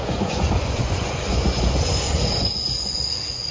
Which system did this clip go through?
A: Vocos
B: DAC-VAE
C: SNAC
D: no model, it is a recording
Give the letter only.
A